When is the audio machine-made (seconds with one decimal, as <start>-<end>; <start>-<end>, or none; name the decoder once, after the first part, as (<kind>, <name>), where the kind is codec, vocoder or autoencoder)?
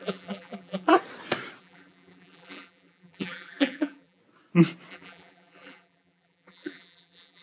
0.0-0.9 (vocoder, BigVGAN v2); 1.6-4.2; 4.9-7.4